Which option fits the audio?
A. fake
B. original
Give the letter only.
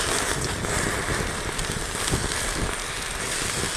B